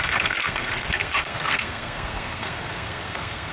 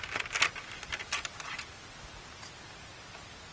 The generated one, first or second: first